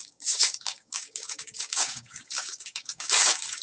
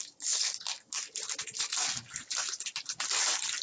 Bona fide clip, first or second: second